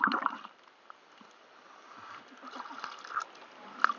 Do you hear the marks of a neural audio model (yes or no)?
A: no